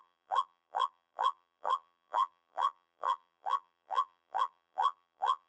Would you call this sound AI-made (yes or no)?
yes